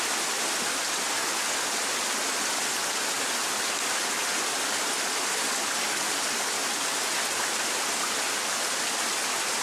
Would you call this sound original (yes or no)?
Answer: yes